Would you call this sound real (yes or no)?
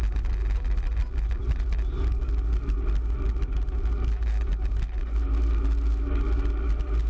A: yes